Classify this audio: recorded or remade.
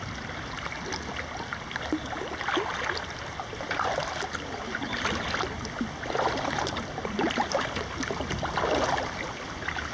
recorded